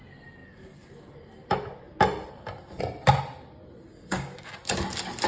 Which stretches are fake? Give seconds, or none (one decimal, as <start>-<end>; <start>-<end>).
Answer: 3.9-4.5